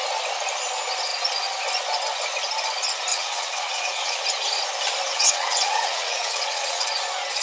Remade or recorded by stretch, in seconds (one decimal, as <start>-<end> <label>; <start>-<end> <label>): 0.0-3.1 recorded; 3.1-4.2 remade; 4.2-5.1 recorded; 5.1-6.9 remade; 6.9-7.4 recorded